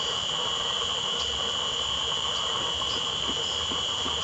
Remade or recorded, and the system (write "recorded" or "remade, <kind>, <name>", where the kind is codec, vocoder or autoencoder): remade, vocoder, BigVGAN v2